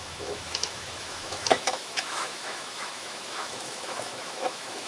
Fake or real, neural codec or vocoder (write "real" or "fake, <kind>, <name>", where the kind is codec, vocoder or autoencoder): fake, autoencoder, DAC-VAE